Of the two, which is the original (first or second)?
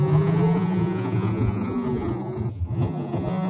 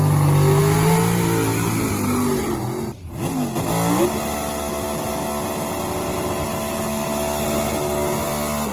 second